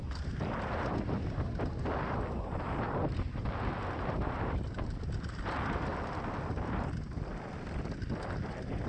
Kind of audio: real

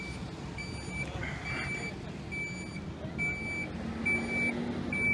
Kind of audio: real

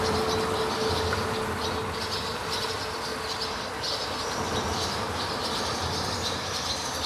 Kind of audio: real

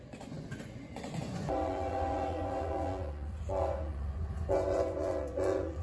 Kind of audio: fake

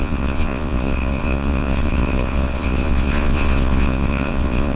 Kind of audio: fake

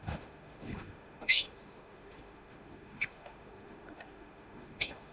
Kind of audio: fake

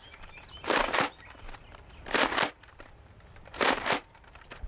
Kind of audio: fake